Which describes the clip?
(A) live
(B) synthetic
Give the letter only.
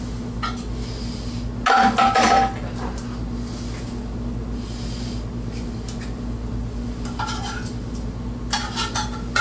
A